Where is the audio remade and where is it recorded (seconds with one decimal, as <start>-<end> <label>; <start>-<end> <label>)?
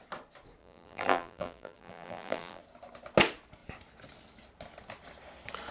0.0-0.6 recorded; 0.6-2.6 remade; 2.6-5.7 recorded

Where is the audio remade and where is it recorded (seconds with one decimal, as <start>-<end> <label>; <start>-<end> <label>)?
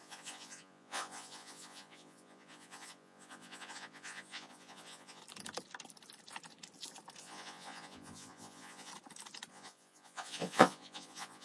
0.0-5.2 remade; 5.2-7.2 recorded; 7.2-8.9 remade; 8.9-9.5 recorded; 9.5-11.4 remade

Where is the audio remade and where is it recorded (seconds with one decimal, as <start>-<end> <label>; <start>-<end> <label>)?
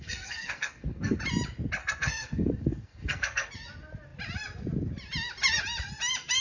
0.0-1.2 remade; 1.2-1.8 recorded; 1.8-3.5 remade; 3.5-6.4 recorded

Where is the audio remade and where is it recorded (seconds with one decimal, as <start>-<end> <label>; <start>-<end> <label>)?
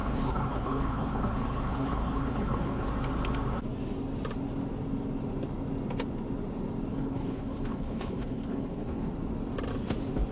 0.0-2.9 remade; 2.9-6.9 recorded; 6.9-9.1 remade; 9.1-10.3 recorded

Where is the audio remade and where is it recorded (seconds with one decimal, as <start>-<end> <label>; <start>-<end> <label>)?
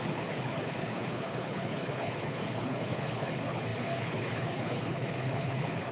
0.0-5.9 remade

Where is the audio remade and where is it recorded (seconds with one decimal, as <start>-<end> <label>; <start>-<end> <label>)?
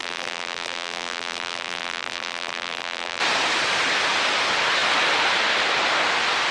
0.0-3.2 remade; 3.2-6.5 recorded